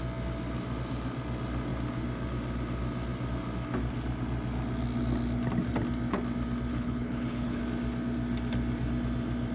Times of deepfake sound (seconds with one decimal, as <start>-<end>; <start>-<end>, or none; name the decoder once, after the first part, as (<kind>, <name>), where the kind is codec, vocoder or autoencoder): 6.7-7.6 (codec, HILCodec)